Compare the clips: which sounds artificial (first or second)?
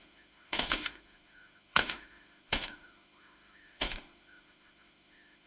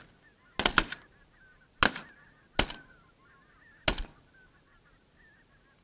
first